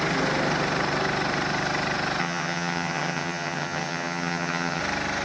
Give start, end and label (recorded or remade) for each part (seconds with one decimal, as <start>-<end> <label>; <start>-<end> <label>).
0.0-2.2 recorded; 2.2-4.8 remade; 4.8-5.2 recorded